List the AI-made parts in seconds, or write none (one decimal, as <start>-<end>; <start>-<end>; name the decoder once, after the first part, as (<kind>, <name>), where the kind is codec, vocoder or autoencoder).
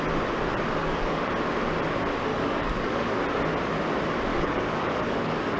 0.8-1.3 (codec, DAC); 2.3-3.2; 4.3-5.6